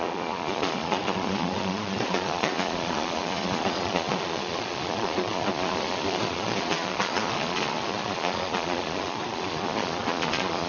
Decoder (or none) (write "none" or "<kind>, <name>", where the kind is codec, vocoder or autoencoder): vocoder, Vocos